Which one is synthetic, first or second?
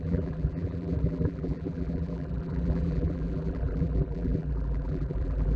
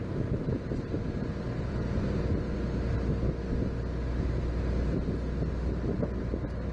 first